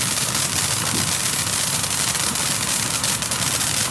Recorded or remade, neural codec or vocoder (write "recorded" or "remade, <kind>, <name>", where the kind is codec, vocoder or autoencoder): recorded